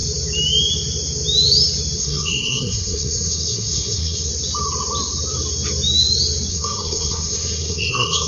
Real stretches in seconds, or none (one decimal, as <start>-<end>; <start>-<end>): 0.0-2.0; 4.3-6.5